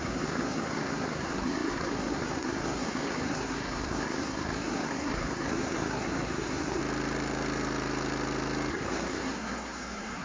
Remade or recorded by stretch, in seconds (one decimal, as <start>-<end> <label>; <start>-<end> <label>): 0.0-6.8 remade; 6.8-8.7 recorded; 8.7-10.2 remade